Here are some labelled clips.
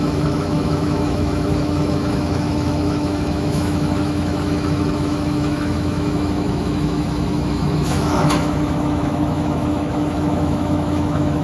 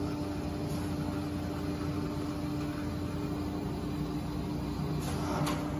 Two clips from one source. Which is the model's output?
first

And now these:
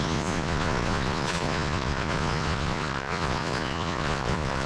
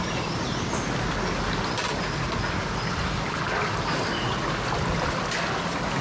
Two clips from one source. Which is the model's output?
first